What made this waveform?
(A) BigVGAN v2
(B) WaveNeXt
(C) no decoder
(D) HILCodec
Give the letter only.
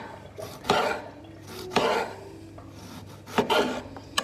C